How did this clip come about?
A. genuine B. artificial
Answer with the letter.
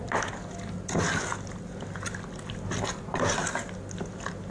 A